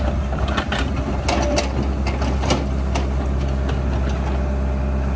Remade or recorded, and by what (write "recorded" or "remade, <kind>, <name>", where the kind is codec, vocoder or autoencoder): recorded